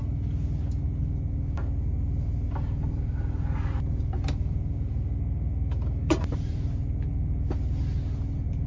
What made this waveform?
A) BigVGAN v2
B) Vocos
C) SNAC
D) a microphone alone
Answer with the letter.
D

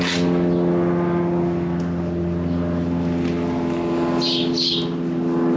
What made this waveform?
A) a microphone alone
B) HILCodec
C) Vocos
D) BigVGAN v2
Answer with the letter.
A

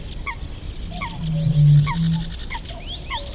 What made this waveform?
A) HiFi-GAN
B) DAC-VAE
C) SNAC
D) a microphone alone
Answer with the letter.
D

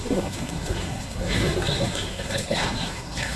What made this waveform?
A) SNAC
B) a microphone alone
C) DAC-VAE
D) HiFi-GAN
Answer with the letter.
A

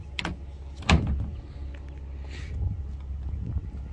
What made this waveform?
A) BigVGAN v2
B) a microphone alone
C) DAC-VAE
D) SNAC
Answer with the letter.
B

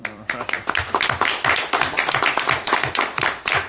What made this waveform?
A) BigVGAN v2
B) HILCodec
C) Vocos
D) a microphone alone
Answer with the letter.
A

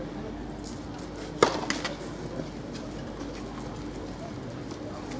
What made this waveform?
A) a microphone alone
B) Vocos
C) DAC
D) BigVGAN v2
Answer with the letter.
A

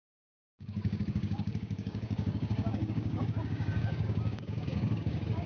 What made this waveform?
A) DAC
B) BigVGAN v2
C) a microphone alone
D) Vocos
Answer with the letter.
A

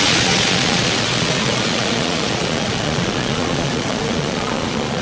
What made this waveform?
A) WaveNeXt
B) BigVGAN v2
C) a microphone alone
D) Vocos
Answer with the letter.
D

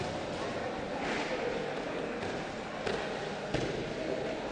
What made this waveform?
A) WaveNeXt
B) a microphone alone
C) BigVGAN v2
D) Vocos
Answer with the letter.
B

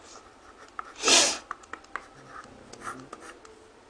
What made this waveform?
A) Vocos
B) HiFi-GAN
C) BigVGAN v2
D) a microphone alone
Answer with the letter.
D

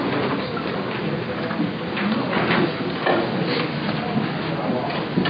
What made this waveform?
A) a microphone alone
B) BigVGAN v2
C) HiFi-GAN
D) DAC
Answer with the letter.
A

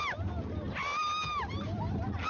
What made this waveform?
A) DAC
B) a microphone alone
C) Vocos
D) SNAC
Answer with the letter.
B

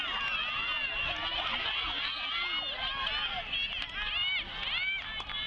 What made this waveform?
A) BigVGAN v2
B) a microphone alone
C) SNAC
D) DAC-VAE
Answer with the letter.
B